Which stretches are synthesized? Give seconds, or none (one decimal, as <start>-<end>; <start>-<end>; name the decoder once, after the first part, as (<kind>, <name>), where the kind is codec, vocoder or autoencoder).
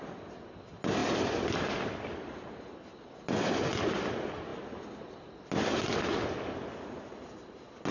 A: none